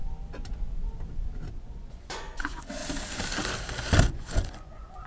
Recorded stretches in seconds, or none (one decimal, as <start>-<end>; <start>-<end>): 0.0-1.5; 2.8-4.0